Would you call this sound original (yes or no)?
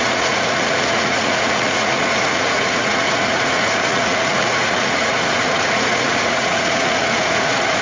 no